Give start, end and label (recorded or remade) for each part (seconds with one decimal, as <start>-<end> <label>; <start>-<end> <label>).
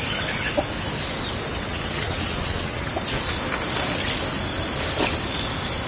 0.0-1.5 recorded; 1.5-2.9 remade; 2.9-5.9 recorded